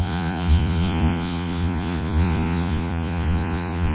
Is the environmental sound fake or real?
fake